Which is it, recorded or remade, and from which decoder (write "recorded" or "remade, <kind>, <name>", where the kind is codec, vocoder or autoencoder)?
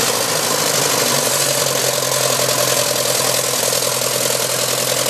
recorded